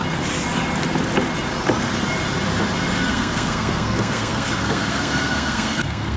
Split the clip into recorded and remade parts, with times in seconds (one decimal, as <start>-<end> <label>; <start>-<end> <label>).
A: 0.0-3.1 recorded; 3.1-6.2 remade